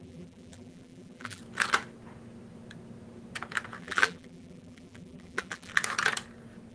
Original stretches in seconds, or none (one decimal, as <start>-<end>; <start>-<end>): 1.4-3.8; 5.7-6.7